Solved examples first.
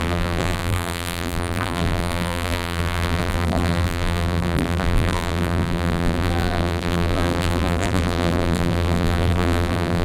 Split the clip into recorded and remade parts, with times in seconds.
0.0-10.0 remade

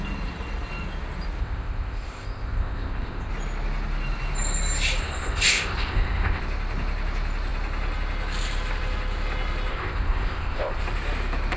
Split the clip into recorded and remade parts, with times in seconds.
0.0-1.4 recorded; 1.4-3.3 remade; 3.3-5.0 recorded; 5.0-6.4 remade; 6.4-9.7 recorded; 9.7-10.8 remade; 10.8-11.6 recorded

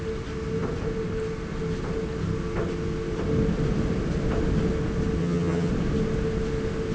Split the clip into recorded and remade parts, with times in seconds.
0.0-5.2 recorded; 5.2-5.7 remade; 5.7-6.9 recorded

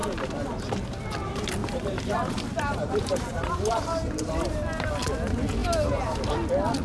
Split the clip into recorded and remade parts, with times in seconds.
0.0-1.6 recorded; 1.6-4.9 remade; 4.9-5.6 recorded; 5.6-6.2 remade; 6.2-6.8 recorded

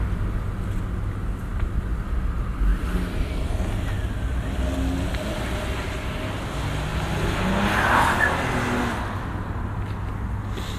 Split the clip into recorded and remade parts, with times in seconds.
0.0-10.8 recorded